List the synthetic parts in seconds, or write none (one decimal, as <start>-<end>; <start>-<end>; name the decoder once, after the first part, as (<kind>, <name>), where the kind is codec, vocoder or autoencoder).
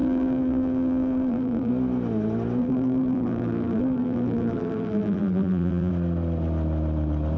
0.0-1.7 (vocoder, BigVGAN v2); 2.6-5.9